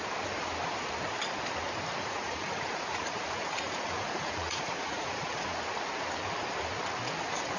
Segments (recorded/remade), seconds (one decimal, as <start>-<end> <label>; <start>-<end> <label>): 0.0-2.0 recorded; 2.0-5.6 remade; 5.6-7.6 recorded